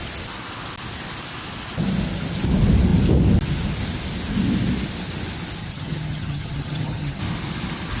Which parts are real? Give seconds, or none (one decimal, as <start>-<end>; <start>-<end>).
0.0-5.6; 7.2-8.0